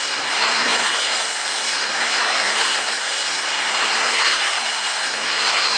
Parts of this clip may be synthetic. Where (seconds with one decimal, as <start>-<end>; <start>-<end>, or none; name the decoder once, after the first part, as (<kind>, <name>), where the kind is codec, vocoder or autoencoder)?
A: 0.0-5.8 (codec, SNAC)